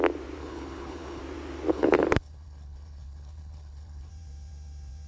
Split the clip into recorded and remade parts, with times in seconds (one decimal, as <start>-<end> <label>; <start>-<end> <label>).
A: 0.0-0.4 recorded; 0.4-1.2 remade; 1.2-1.7 recorded; 1.7-4.1 remade; 4.1-5.1 recorded